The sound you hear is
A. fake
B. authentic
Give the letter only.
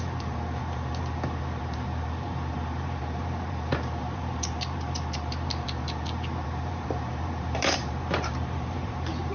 A